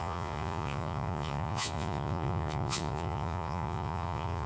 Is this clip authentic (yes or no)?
no